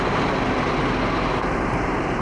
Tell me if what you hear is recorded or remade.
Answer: recorded